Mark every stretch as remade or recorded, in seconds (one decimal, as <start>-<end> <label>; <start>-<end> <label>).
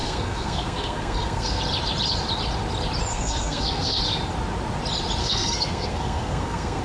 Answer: 0.0-1.6 remade; 1.6-3.1 recorded; 3.1-4.0 remade; 4.0-5.2 recorded; 5.2-6.8 remade